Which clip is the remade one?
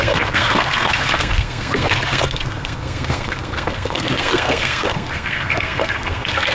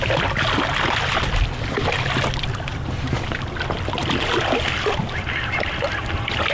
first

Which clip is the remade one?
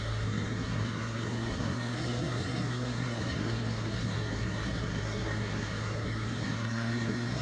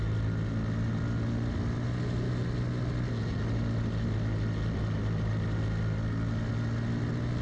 first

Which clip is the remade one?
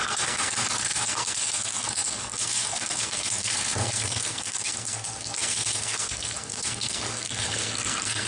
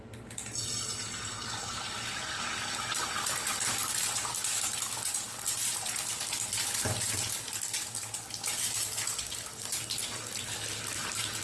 first